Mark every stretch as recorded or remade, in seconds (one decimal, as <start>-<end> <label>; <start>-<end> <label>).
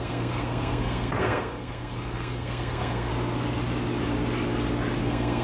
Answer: 0.0-3.1 remade; 3.1-5.0 recorded; 5.0-5.4 remade